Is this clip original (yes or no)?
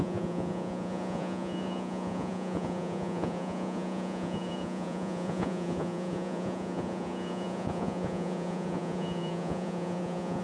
no